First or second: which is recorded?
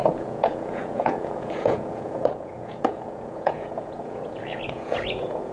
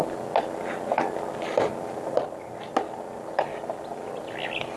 second